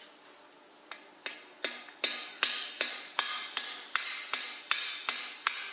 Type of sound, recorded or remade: recorded